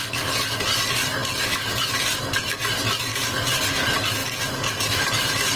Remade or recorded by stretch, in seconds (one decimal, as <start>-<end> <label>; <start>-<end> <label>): 0.0-5.6 recorded